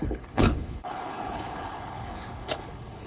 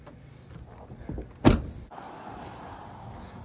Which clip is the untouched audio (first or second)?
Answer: second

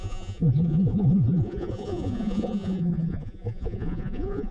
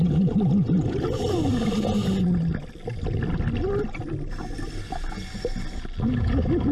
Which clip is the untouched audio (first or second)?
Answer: second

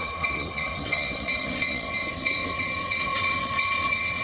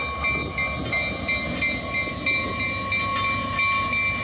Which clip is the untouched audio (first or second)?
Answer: second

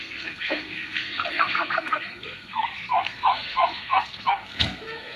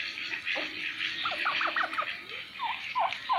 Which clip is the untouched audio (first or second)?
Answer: second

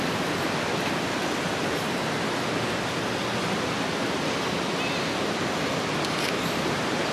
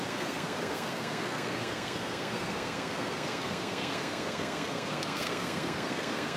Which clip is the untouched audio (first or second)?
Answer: first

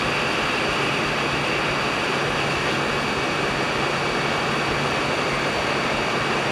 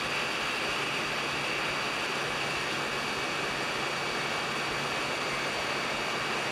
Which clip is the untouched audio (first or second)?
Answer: second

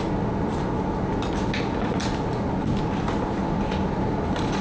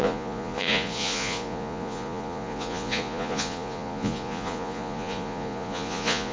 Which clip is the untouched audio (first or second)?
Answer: first